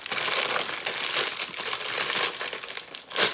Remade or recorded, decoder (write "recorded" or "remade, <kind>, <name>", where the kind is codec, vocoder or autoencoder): recorded